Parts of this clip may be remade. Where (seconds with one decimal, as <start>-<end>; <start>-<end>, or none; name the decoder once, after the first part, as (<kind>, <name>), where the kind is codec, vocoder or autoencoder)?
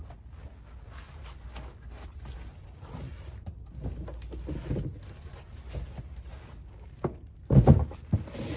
none